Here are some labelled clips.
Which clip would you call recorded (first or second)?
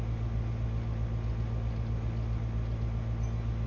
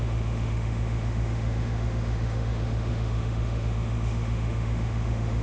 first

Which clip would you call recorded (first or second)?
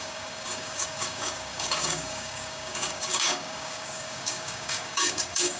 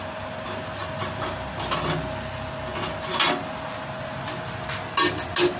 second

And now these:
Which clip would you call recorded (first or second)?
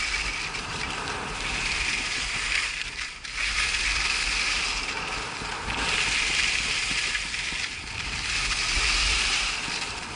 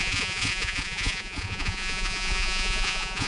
first